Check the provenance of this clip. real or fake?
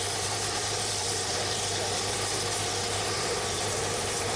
fake